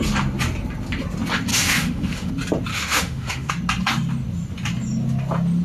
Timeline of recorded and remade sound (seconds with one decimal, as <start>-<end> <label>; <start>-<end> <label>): 0.0-1.5 recorded; 1.5-2.3 remade; 2.3-2.7 recorded; 2.7-3.5 remade; 3.5-5.6 recorded